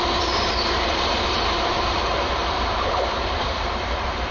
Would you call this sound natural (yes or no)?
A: no